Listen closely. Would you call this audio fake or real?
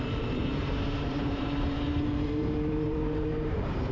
fake